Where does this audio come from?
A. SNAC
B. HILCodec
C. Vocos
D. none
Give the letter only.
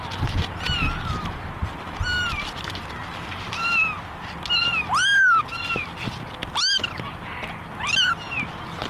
D